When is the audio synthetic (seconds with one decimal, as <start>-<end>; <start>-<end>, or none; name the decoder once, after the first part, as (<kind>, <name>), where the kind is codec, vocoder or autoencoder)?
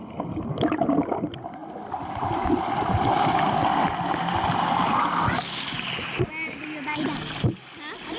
none